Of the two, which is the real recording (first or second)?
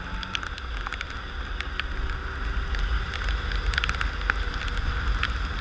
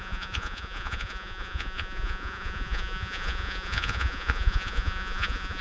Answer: first